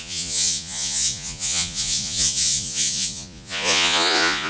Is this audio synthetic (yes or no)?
yes